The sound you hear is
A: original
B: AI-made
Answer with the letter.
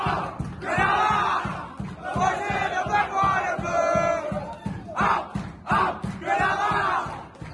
A